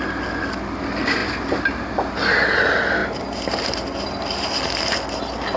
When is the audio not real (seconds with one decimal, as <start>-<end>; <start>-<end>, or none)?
none